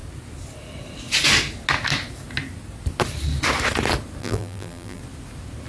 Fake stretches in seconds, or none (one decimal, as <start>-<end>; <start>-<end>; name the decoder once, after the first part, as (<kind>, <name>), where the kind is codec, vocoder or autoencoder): 4.2-5.0 (vocoder, BigVGAN v2)